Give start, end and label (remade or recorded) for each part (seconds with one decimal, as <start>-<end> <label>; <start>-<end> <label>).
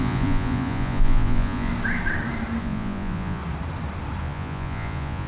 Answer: 0.0-1.7 remade; 1.7-2.6 recorded; 2.6-3.4 remade; 3.4-4.2 recorded; 4.2-5.3 remade